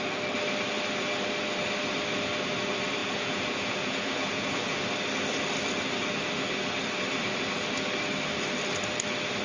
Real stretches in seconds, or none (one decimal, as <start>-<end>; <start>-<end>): 0.0-3.0; 4.8-9.4